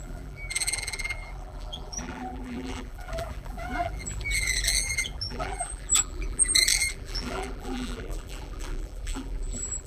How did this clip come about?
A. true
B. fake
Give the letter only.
B